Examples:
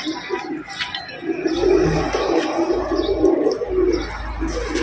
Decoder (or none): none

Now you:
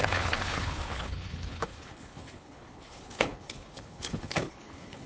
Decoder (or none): codec, HILCodec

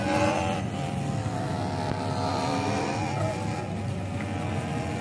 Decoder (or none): none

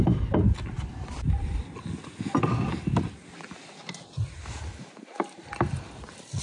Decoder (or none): none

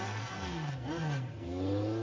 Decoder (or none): codec, SNAC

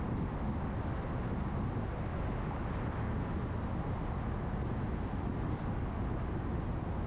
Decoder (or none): none